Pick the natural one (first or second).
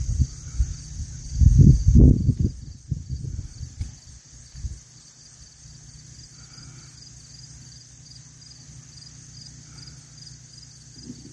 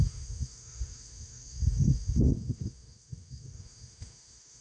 first